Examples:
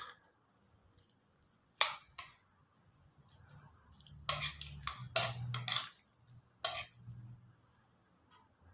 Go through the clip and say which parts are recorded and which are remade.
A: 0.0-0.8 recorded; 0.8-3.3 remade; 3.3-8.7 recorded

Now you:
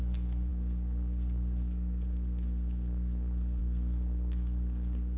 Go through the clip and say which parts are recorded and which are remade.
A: 0.0-5.2 remade

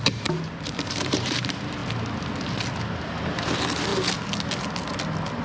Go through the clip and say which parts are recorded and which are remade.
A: 0.0-1.8 remade; 1.8-3.0 recorded; 3.0-3.9 remade; 3.9-5.4 recorded

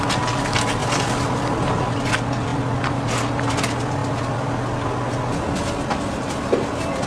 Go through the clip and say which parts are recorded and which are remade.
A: 0.0-7.1 recorded

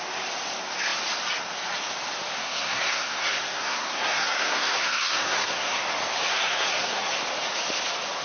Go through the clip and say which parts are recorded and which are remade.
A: 0.0-2.4 recorded; 2.4-5.8 remade; 5.8-6.3 recorded; 6.3-7.1 remade; 7.1-8.2 recorded

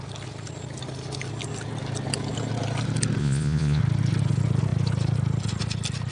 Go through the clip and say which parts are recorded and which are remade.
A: 0.0-3.2 recorded; 3.2-3.8 remade; 3.8-6.1 recorded